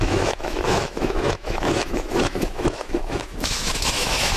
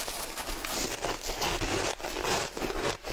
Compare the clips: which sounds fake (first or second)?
first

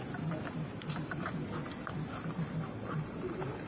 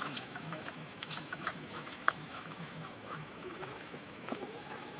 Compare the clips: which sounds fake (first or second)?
second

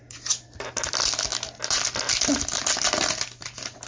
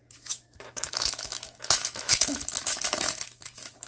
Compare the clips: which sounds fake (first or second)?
second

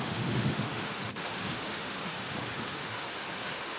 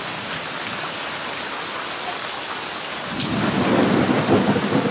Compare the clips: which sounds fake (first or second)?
first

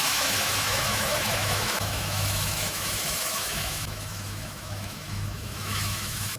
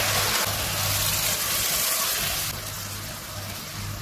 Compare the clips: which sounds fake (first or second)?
first